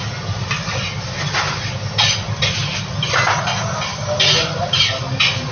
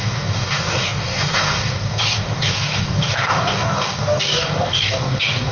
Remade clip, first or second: second